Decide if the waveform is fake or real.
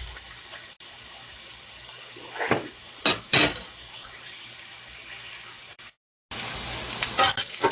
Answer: real